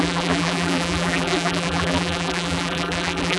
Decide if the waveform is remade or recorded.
remade